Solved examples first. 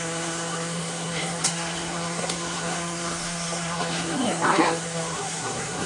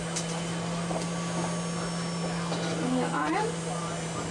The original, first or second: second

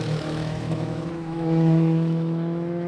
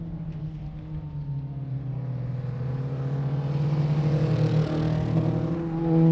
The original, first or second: second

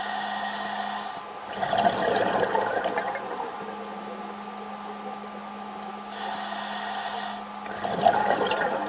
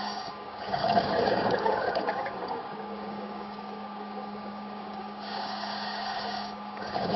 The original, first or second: first